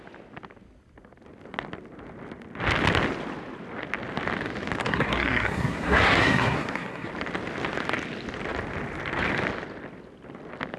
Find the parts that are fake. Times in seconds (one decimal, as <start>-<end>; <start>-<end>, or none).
4.8-7.1